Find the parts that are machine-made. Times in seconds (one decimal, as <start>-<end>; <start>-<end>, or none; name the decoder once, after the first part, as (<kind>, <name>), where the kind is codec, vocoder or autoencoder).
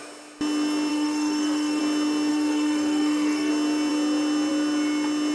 0.9-1.8 (codec, SNAC); 2.3-3.5